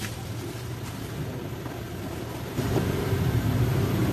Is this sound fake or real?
fake